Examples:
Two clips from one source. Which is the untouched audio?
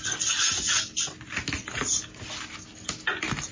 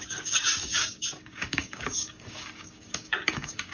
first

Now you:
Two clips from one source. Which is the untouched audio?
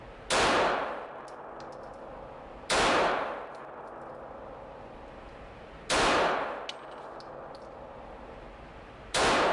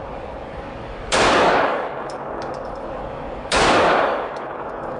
first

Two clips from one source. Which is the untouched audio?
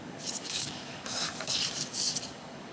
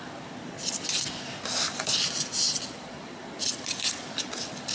second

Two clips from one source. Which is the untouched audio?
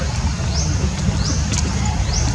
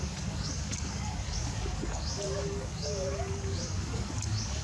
first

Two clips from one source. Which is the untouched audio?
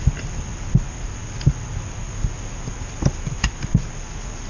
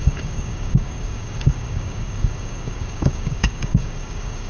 first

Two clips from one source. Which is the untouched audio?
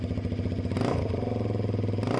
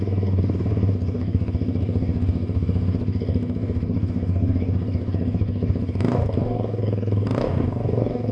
first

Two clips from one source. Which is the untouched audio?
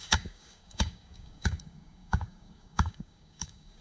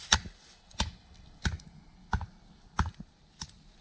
second